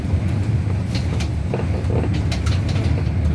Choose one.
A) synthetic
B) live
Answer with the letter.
B